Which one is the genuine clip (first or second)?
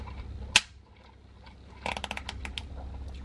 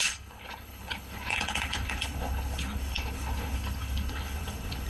first